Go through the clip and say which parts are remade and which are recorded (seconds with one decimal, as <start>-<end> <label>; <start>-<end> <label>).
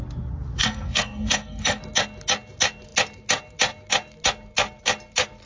0.0-0.6 recorded; 0.6-1.8 remade; 1.8-5.5 recorded